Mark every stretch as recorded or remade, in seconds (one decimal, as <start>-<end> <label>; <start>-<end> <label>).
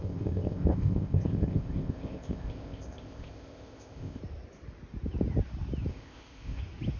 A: 0.0-4.2 remade; 4.2-5.9 recorded; 5.9-6.6 remade; 6.6-7.0 recorded